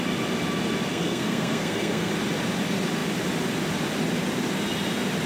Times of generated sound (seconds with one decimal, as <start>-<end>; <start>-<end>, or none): 0.9-2.1